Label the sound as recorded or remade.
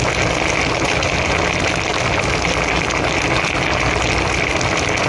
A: recorded